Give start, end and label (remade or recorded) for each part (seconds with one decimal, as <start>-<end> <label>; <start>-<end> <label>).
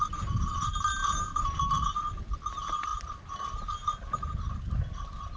0.0-5.4 recorded